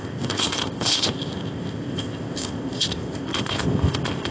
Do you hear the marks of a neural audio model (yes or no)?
yes